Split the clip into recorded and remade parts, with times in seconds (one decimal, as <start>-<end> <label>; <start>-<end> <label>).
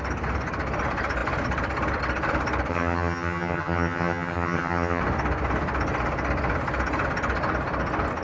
0.0-2.7 recorded; 2.7-5.0 remade; 5.0-8.2 recorded